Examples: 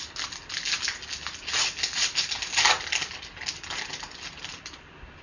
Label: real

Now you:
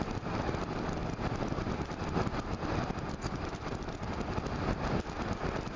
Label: real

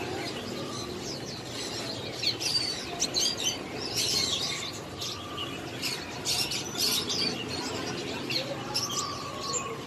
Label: real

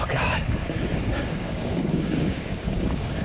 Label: fake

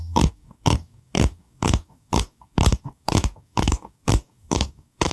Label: fake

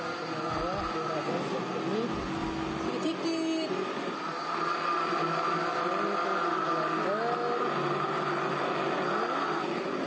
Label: real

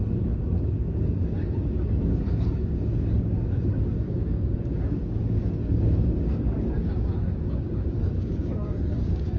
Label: fake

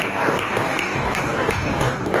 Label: fake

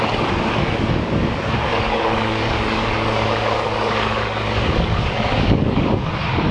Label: fake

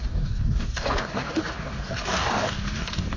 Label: fake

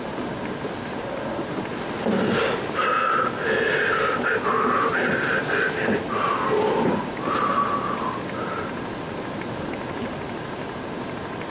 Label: real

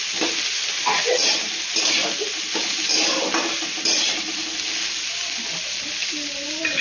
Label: real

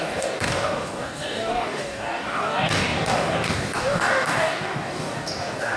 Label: fake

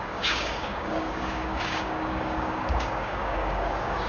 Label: fake